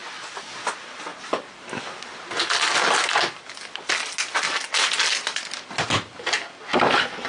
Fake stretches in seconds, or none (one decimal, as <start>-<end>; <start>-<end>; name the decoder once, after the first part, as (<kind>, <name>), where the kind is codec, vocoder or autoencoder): none